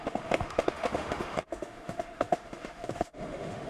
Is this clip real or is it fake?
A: fake